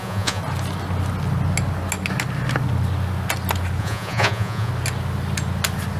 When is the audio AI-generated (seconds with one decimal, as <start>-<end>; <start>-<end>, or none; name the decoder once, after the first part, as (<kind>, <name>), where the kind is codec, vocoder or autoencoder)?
0.0-0.4 (vocoder, Vocos); 3.8-4.7